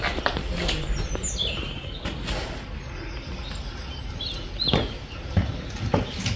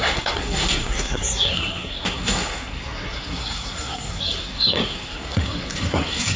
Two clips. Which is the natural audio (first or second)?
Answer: first